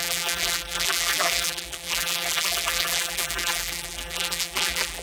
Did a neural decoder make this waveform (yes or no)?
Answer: yes